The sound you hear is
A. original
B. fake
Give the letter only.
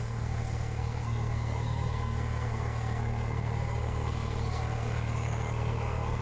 B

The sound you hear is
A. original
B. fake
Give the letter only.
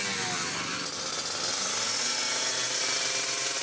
A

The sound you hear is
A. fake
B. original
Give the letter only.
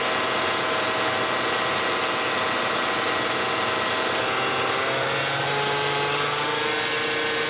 B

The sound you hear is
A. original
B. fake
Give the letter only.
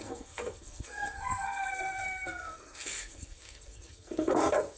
B